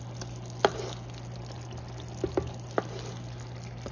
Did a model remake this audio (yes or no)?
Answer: no